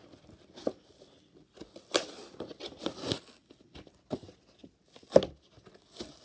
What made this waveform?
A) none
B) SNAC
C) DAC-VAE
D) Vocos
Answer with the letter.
A